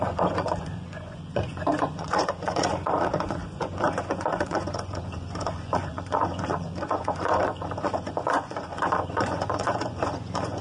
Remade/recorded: remade